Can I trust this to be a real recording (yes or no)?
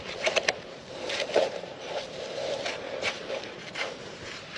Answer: no